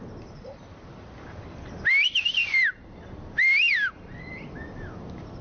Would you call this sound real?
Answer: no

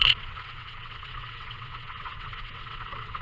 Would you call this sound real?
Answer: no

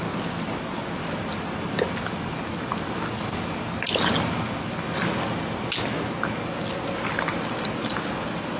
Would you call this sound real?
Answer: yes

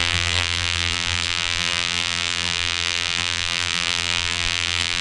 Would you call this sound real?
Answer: no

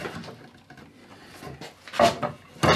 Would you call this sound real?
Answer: yes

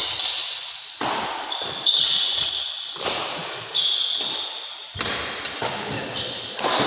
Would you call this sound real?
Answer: yes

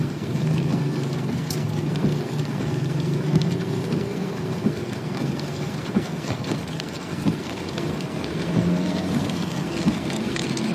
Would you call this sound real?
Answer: no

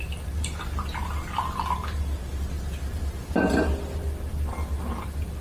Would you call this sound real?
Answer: yes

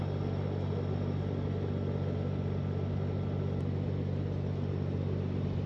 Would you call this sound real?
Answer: yes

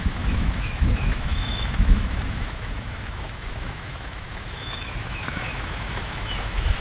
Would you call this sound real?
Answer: no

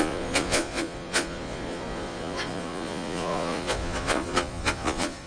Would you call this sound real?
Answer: no